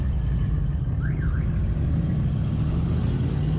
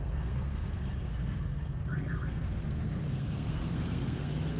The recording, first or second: first